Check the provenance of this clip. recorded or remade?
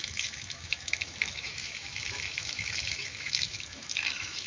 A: remade